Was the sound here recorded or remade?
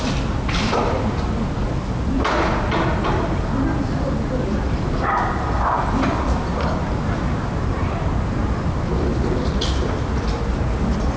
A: recorded